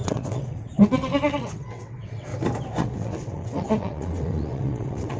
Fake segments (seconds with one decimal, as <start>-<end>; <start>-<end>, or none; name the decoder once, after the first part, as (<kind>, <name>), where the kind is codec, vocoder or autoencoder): 0.0-2.3 (vocoder, WaveNeXt); 2.8-5.2